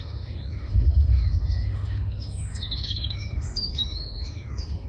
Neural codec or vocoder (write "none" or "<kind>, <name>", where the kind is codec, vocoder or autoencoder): autoencoder, DAC-VAE